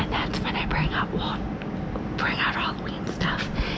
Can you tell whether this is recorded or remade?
recorded